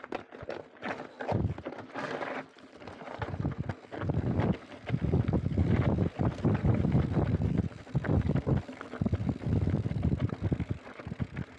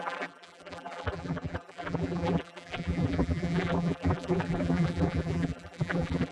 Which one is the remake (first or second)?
second